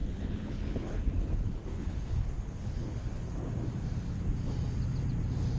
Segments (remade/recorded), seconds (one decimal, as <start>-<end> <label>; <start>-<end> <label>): 0.0-3.4 remade; 3.4-5.6 recorded